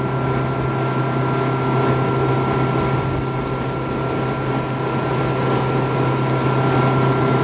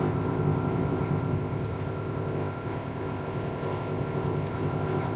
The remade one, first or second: second